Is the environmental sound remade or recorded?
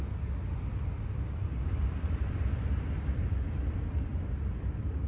remade